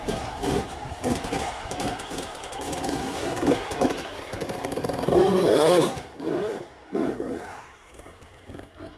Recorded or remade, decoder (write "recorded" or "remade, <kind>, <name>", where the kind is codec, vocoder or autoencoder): remade, codec, SNAC